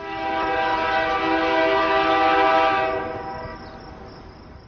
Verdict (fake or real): real